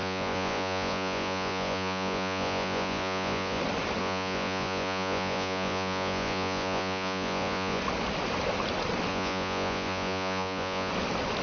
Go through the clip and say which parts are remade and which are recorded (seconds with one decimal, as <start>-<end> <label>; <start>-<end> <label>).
0.0-3.6 remade; 3.6-4.0 recorded; 4.0-7.8 remade; 7.8-9.1 recorded; 9.1-10.9 remade; 10.9-11.4 recorded